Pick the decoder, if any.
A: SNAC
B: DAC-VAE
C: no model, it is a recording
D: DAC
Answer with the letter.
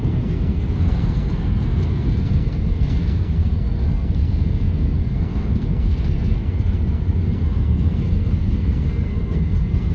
A